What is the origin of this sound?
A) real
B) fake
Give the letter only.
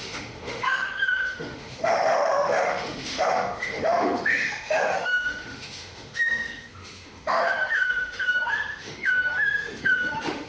B